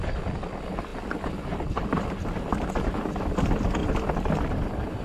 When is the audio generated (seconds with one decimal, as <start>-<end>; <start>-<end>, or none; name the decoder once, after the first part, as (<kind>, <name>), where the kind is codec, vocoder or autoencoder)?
none